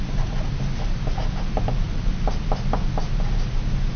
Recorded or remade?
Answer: recorded